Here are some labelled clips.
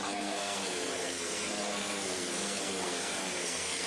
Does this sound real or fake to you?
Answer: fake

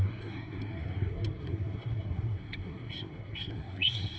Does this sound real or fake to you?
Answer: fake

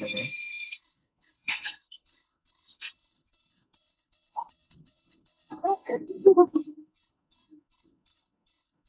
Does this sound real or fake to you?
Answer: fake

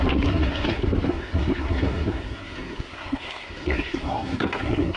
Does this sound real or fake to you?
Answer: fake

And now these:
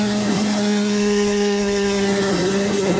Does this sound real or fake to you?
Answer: fake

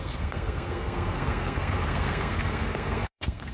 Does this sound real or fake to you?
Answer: fake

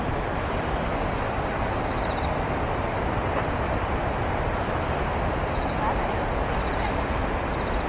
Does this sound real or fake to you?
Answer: real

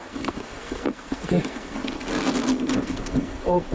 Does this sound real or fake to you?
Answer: fake